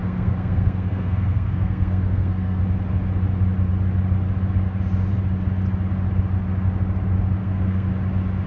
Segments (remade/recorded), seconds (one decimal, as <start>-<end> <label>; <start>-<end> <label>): 0.0-2.6 remade; 2.6-7.4 recorded; 7.4-7.9 remade; 7.9-8.5 recorded

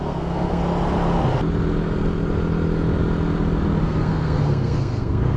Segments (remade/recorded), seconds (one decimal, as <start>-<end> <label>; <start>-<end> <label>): 0.0-0.6 remade; 0.6-3.8 recorded; 3.8-5.4 remade

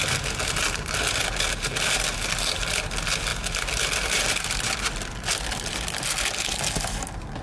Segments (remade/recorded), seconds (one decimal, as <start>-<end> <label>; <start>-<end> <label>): 0.0-7.4 recorded

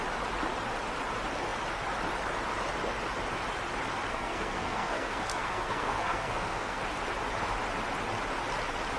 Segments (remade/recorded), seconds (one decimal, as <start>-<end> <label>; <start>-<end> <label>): 0.0-4.1 recorded; 4.1-6.8 remade; 6.8-9.0 recorded

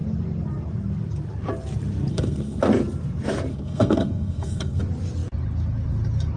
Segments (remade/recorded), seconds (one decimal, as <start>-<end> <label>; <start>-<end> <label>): 0.0-2.1 recorded; 2.1-2.6 remade; 2.6-3.5 recorded; 3.5-4.8 remade; 4.8-6.4 recorded

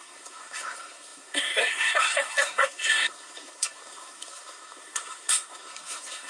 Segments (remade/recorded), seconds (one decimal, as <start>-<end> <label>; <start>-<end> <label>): 0.0-6.3 remade

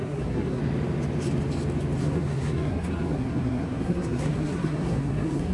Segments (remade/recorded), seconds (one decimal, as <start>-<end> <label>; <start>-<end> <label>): 0.0-0.6 remade; 0.6-2.0 recorded; 2.0-5.5 remade

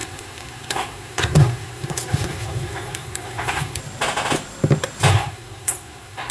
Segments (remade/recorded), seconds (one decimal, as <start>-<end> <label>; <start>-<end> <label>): 0.0-3.8 remade; 3.8-5.1 recorded; 5.1-6.3 remade